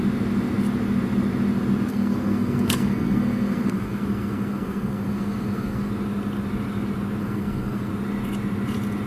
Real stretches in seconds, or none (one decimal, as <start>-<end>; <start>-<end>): 0.0-1.9; 5.9-7.2; 7.9-9.1